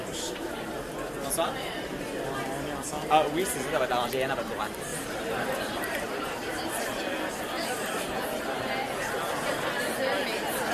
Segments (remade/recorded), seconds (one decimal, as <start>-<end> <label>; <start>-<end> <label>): 0.0-0.7 remade; 0.7-4.9 recorded; 4.9-8.2 remade; 8.2-10.7 recorded

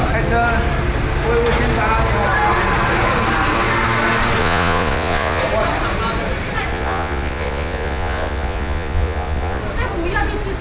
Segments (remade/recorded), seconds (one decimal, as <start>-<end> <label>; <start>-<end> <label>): 0.0-4.4 recorded; 4.4-5.4 remade; 5.4-6.7 recorded; 6.7-9.6 remade; 9.6-10.6 recorded

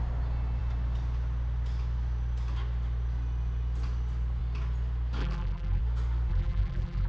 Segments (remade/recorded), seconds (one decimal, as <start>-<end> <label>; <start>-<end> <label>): 0.0-5.2 recorded; 5.2-5.8 remade; 5.8-6.3 recorded; 6.3-7.1 remade